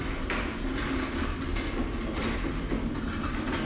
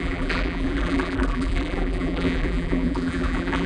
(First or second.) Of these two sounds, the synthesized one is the second